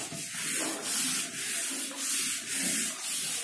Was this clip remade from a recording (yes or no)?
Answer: no